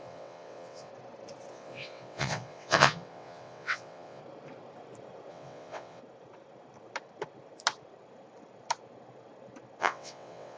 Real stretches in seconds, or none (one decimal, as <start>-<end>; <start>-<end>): 0.9-1.5; 4.2-5.3; 6.0-9.8